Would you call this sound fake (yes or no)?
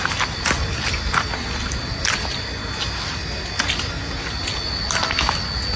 no